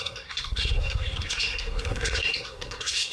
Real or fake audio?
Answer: fake